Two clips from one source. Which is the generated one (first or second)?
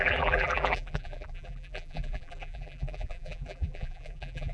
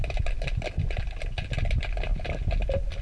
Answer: first